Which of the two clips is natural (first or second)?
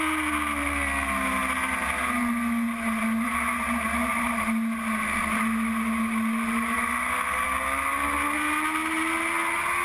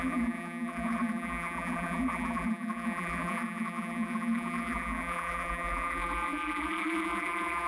first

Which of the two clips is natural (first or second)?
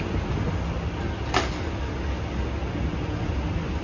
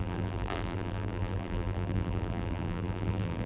first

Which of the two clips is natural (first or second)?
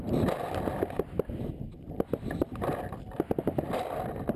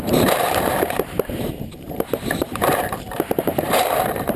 first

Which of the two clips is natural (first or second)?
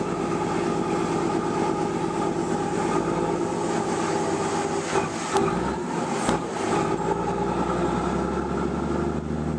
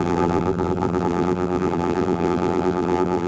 first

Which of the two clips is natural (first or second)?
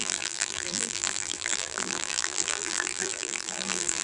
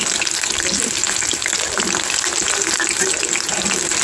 second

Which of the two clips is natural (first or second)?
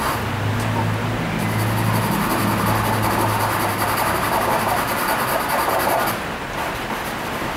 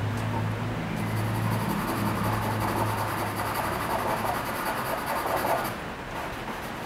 second